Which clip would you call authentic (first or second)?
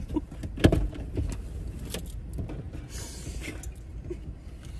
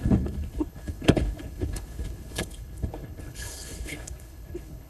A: first